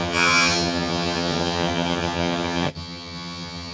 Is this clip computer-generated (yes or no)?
yes